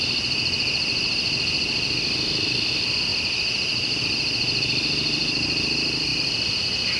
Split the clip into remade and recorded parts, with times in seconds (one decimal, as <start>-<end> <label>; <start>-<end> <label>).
0.0-7.0 recorded